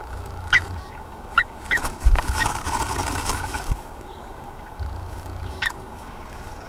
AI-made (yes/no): yes